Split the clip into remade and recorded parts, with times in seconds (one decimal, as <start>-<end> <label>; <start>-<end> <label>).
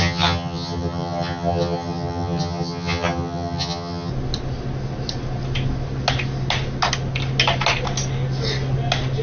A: 0.0-4.1 remade; 4.1-9.2 recorded